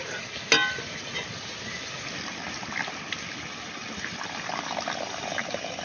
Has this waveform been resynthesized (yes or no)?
no